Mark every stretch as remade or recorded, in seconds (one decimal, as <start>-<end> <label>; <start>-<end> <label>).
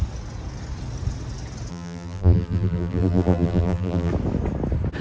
0.0-1.7 recorded; 1.7-4.1 remade; 4.1-5.0 recorded